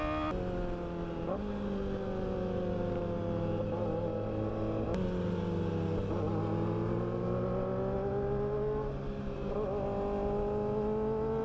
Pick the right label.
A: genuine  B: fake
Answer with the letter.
A